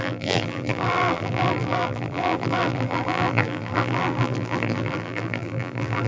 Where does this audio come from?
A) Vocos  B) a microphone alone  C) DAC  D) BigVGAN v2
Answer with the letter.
D